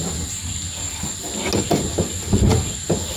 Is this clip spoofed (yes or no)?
no